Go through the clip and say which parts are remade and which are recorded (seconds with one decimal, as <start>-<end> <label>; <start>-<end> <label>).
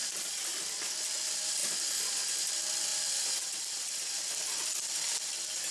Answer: 0.0-5.7 recorded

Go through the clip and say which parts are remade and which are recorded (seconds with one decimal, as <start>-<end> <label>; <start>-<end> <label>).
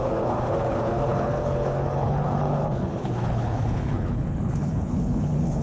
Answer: 0.0-5.6 remade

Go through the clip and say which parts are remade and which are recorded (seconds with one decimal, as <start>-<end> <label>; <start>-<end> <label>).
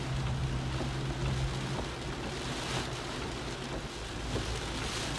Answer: 0.0-5.2 recorded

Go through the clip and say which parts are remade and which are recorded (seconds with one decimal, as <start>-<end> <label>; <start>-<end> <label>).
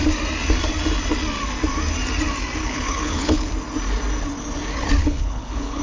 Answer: 0.0-2.6 recorded; 2.6-3.5 remade; 3.5-5.0 recorded; 5.0-5.8 remade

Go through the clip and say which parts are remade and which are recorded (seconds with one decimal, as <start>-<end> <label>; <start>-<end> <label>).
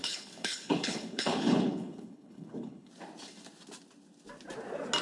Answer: 0.0-2.9 remade; 2.9-5.0 recorded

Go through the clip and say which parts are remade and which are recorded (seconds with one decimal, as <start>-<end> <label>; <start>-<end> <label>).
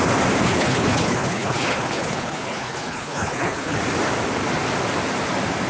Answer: 0.0-0.4 recorded; 0.4-3.8 remade; 3.8-5.7 recorded